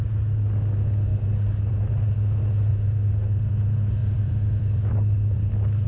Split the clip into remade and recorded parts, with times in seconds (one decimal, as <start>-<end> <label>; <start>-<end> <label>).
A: 0.0-2.7 recorded; 2.7-3.5 remade; 3.5-4.0 recorded; 4.0-5.5 remade; 5.5-5.9 recorded

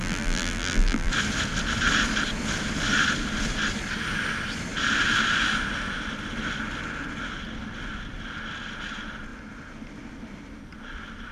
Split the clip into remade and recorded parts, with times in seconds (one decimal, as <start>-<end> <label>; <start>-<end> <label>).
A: 0.0-1.1 remade; 1.1-11.3 recorded

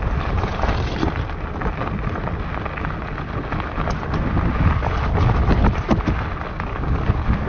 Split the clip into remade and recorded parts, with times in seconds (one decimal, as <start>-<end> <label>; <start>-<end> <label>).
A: 0.0-6.7 recorded; 6.7-7.5 remade

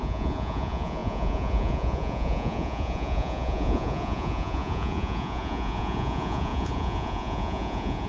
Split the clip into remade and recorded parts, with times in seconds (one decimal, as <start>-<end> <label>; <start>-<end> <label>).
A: 0.0-8.1 remade

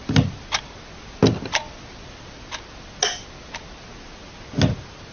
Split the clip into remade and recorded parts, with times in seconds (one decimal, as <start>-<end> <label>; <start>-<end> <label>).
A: 0.0-5.1 recorded

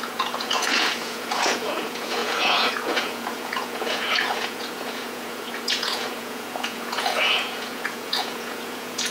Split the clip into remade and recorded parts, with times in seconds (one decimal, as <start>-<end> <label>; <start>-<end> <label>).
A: 0.0-9.1 remade